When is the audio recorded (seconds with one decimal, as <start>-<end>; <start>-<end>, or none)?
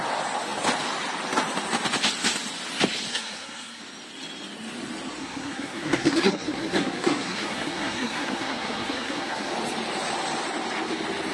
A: 0.0-3.1; 3.8-5.2; 9.5-11.3